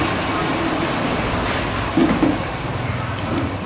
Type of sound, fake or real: real